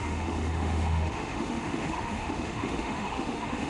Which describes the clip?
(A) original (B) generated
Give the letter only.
B